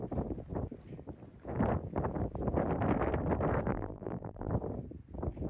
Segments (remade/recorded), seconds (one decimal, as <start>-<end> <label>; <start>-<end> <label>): 0.0-3.7 recorded; 3.7-4.5 remade; 4.5-5.5 recorded